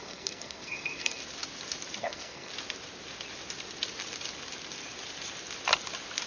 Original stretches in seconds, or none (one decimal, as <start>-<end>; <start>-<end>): 1.2-2.0; 2.5-6.3